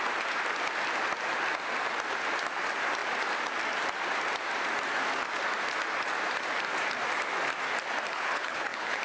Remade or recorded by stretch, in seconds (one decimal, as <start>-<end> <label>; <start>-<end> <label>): 0.0-8.1 recorded; 8.1-9.0 remade